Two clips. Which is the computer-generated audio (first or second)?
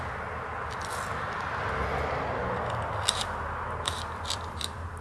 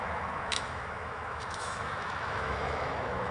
second